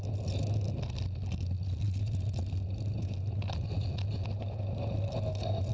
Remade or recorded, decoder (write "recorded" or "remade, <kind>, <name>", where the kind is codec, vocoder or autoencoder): recorded